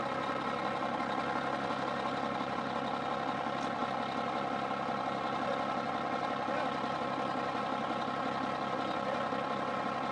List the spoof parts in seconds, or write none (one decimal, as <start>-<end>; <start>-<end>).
none